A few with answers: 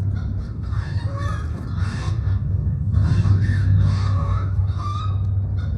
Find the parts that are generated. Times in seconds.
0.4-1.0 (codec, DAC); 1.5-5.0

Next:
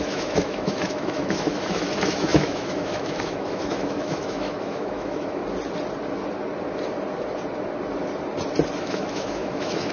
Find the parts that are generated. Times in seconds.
0.0-5.4 (autoencoder, DAC-VAE); 8.8-9.9

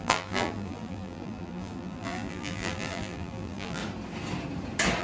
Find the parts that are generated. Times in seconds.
0.0-3.8 (vocoder, BigVGAN v2)